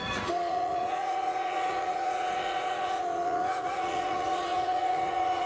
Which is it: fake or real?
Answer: fake